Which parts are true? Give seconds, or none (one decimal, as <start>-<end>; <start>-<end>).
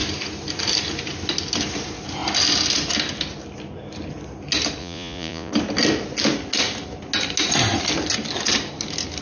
0.0-4.8; 5.5-9.2